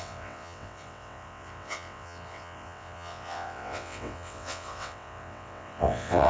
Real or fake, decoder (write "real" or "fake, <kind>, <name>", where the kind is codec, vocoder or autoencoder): fake, vocoder, WaveNeXt